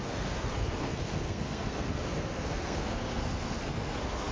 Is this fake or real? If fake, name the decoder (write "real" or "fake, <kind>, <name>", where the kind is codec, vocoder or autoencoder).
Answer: fake, codec, SNAC